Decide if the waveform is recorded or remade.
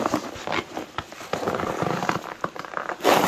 recorded